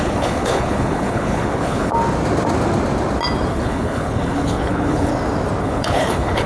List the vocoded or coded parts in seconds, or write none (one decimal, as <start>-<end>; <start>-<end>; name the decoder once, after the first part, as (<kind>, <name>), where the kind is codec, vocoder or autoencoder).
0.0-1.9 (codec, HILCodec); 3.5-5.1; 5.6-6.5